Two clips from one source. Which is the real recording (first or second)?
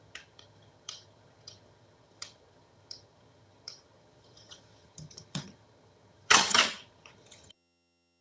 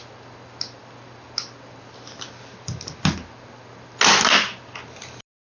second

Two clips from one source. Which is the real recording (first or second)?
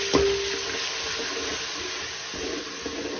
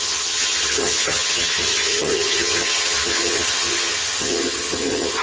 first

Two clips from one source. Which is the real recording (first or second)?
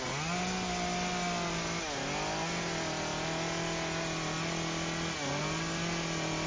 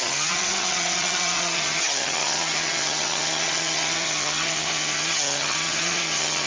first